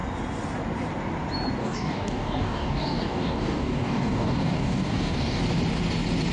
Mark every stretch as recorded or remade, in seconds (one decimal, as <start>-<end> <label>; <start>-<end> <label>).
0.0-1.6 recorded; 1.6-5.4 remade; 5.4-6.3 recorded